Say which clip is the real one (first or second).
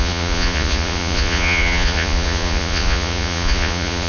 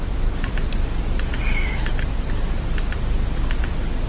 second